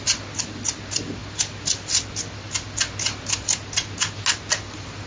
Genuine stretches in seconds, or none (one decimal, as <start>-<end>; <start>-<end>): 0.0-5.1